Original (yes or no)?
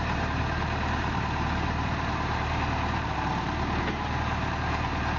no